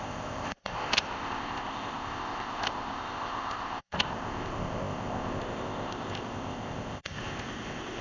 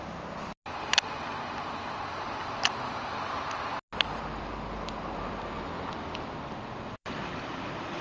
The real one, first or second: second